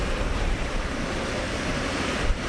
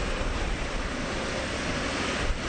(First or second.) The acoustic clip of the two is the second